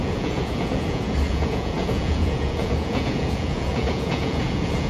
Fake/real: fake